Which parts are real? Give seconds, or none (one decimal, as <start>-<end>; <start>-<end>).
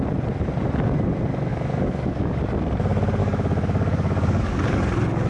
0.0-1.5; 2.4-3.2; 4.8-5.3